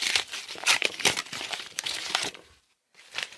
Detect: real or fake fake